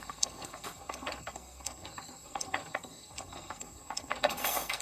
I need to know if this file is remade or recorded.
remade